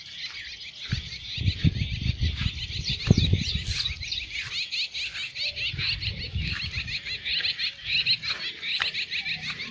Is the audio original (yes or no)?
yes